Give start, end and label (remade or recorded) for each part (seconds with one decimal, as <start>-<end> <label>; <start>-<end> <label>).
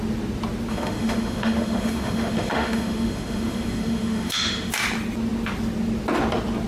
0.0-0.7 recorded; 0.7-4.7 remade; 4.7-6.7 recorded